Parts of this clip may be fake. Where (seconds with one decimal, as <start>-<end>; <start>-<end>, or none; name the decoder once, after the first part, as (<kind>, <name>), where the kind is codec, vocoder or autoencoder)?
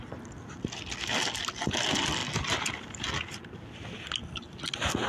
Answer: none